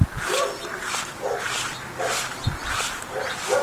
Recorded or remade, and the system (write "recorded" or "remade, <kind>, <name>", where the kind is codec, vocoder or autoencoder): remade, vocoder, BigVGAN v2